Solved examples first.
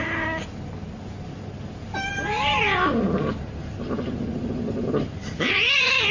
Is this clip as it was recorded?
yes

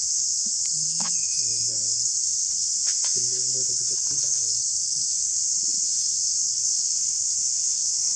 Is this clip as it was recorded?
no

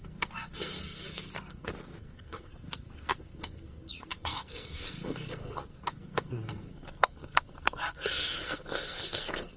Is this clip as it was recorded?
no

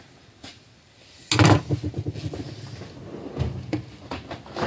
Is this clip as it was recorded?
yes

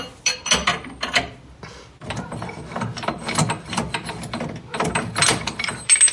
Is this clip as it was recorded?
yes